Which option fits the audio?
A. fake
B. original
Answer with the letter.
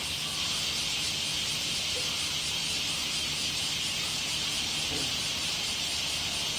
B